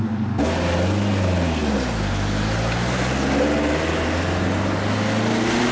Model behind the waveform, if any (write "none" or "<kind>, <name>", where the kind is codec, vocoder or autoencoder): none